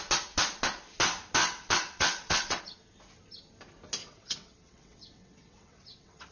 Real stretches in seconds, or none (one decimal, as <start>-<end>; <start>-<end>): 0.0-1.4; 2.6-4.0